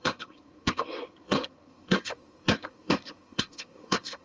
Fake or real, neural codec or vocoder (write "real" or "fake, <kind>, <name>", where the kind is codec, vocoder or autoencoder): fake, codec, SNAC